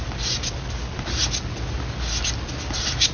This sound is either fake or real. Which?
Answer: real